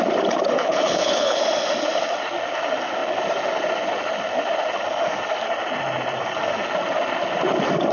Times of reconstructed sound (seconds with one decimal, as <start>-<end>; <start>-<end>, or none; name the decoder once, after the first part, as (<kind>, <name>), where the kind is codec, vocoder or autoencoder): 0.6-1.4 (codec, HILCodec)